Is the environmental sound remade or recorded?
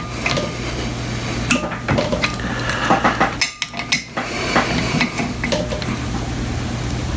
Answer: recorded